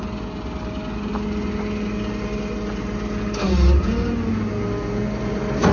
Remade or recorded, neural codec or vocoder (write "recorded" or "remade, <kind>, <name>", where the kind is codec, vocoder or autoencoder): recorded